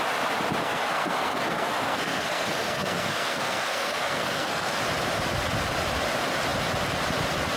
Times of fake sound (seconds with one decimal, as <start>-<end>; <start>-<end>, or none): 0.6-4.8